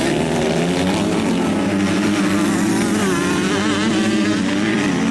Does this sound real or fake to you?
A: real